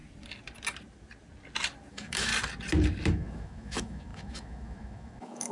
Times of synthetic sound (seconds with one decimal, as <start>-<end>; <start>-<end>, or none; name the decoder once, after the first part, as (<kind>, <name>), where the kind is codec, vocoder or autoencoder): 1.9-2.3 (autoencoder, DAC-VAE); 3.1-5.5